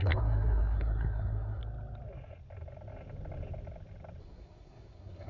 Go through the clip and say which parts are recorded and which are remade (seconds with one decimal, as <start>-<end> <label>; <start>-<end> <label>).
0.0-1.6 remade; 1.6-4.2 recorded; 4.2-5.3 remade